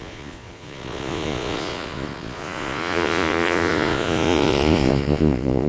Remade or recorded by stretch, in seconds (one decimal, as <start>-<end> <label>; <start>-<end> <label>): 0.0-5.7 remade